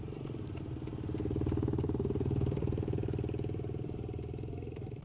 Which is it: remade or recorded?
remade